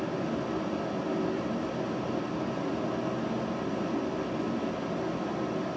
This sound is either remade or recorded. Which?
recorded